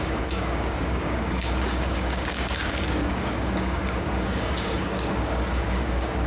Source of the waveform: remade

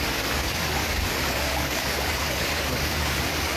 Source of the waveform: remade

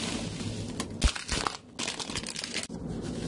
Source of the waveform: recorded